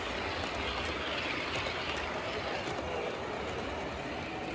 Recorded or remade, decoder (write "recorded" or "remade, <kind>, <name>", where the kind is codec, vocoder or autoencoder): recorded